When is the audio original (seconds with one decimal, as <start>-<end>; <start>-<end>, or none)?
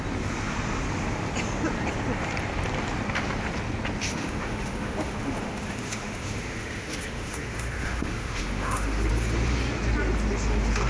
0.0-4.1; 9.1-10.9